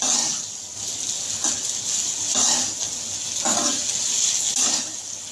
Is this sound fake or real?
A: real